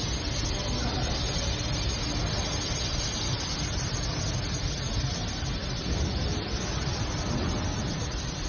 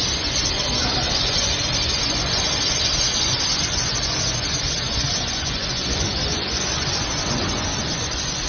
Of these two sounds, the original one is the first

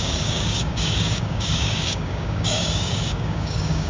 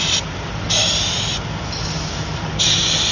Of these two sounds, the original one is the second